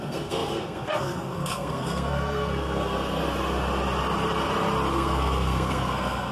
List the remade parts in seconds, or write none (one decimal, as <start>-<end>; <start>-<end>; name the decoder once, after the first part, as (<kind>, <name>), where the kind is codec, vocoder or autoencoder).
0.0-3.2 (codec, SNAC); 4.9-6.3